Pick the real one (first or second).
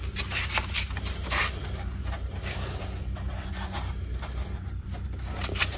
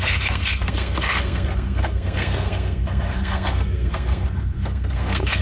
first